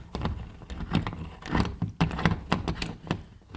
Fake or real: real